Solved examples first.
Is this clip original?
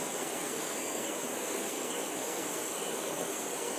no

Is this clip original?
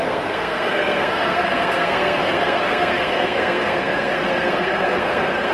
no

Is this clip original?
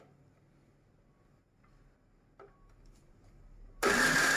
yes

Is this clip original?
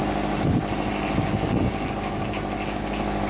yes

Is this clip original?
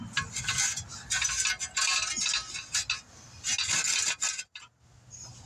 yes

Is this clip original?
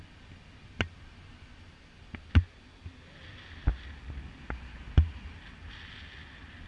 yes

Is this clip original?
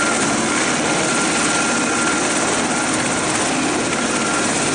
yes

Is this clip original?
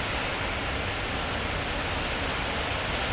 yes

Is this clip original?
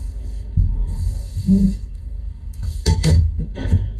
no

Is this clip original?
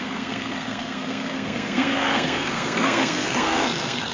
no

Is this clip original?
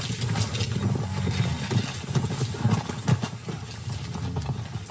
yes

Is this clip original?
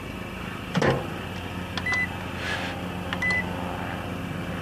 yes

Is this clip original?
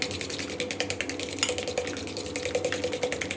yes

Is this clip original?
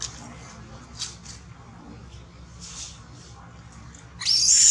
yes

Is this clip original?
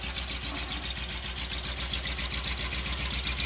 yes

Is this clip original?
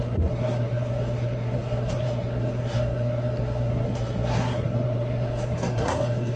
no